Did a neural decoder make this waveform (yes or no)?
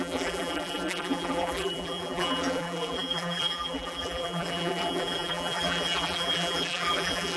yes